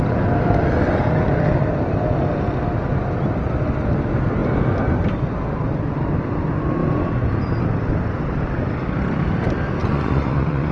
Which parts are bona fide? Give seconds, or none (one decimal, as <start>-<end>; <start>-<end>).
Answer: 0.0-9.8